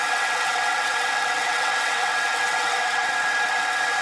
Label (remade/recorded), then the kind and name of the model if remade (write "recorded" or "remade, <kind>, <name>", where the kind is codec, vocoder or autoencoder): remade, vocoder, WaveNeXt